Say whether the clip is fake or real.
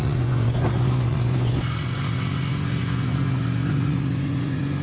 fake